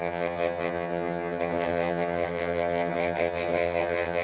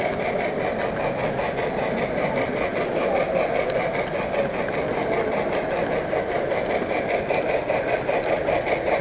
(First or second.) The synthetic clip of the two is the first